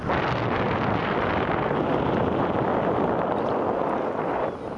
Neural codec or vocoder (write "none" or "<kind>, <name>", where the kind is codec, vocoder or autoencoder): none